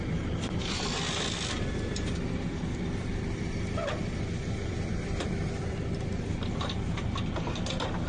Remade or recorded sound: remade